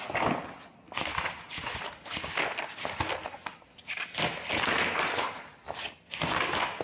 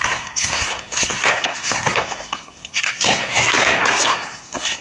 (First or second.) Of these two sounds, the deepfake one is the second